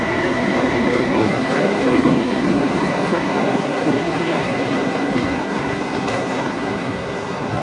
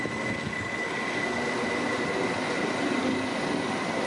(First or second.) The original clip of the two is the second